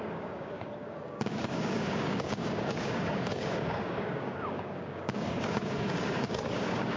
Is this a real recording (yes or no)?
no